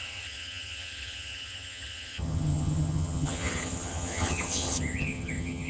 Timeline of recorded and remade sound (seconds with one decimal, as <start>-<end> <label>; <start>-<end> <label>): 0.0-5.7 remade